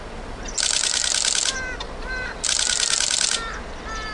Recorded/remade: recorded